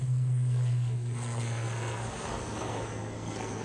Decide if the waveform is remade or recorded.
remade